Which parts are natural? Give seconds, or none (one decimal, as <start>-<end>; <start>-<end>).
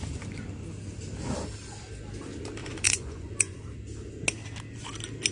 0.0-2.6; 3.6-5.3